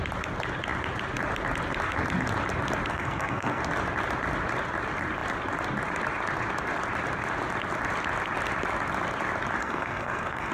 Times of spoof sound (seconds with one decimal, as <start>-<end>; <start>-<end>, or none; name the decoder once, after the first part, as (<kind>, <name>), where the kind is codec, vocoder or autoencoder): 2.9-3.6 (codec, SNAC); 9.6-10.5

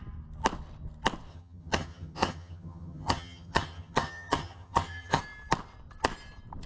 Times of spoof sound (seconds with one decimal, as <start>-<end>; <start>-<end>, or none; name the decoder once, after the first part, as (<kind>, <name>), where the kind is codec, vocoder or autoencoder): 1.3-5.2 (vocoder, HiFi-GAN)

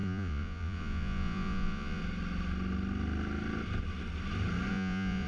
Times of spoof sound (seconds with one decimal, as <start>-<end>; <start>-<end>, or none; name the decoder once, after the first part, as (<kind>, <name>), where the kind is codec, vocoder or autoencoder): 0.0-2.0 (vocoder, Vocos); 4.7-5.3

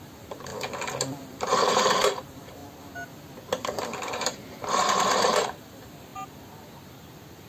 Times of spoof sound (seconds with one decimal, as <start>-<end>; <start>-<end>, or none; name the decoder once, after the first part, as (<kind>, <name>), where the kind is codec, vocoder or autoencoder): 0.0-0.5 (vocoder, BigVGAN v2); 1.2-2.6; 4.1-6.1

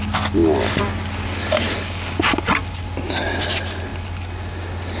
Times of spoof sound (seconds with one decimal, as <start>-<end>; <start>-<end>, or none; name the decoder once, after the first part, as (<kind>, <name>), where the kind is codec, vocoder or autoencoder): none

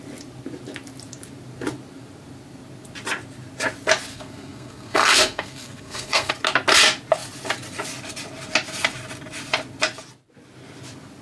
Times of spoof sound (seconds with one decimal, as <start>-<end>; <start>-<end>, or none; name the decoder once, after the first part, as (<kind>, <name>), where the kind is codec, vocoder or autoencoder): 4.1-6.3 (codec, SNAC)

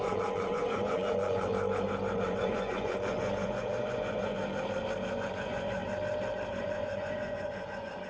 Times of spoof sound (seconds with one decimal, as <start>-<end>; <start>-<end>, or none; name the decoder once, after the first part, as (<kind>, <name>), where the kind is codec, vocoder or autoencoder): 0.0-1.5 (vocoder, Vocos); 2.1-4.4; 5.1-5.8; 6.5-8.1